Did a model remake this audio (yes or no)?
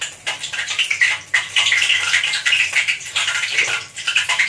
yes